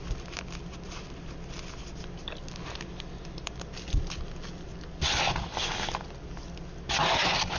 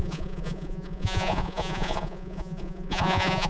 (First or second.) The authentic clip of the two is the first